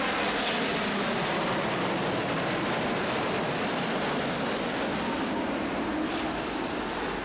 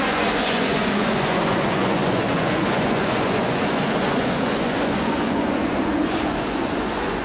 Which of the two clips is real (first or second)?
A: first